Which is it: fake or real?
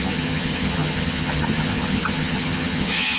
fake